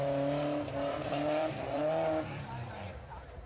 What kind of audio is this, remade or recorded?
remade